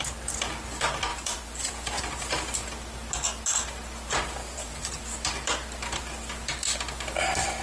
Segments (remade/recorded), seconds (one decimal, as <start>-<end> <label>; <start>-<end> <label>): 0.0-1.1 recorded; 1.1-2.0 remade; 2.0-4.4 recorded; 4.4-5.0 remade; 5.0-7.6 recorded